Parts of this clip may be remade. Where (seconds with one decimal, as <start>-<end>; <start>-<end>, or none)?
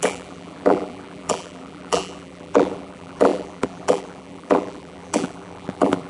0.0-6.1